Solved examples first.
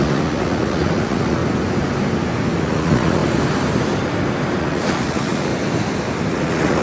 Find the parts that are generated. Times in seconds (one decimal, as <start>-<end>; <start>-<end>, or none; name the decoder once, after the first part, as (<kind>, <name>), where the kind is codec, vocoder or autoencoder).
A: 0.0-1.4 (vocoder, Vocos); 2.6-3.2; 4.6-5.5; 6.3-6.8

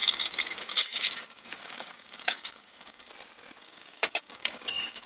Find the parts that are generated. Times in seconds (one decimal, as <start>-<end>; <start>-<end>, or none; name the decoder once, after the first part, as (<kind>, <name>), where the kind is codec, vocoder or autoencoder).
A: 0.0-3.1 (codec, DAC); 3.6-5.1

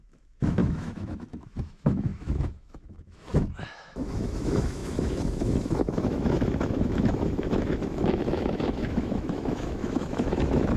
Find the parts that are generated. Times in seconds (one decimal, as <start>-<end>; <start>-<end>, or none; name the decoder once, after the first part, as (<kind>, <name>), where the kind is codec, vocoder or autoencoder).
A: 0.0-10.8 (autoencoder, DAC-VAE)

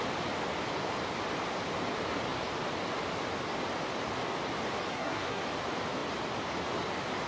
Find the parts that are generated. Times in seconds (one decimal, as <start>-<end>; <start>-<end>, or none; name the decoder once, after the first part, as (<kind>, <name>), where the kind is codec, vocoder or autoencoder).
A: 4.9-5.4 (codec, SNAC)